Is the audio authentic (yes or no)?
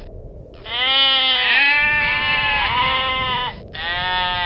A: yes